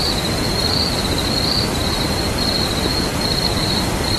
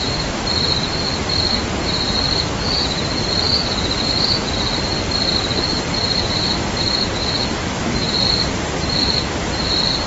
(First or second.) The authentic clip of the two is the second